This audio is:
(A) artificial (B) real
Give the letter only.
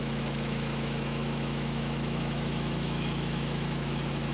A